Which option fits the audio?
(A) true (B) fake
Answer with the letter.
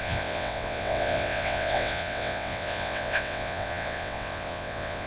B